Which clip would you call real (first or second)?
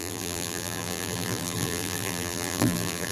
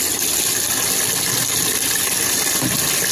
second